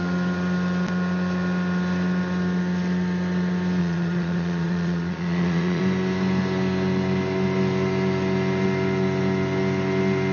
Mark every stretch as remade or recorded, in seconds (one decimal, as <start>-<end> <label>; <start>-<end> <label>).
0.0-3.8 recorded; 3.8-5.8 remade; 5.8-10.3 recorded